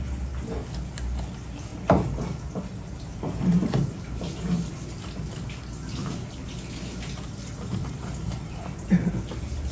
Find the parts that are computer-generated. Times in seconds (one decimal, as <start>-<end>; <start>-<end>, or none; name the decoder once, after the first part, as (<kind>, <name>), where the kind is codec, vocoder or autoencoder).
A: 1.7-3.4 (vocoder, BigVGAN v2); 7.8-9.1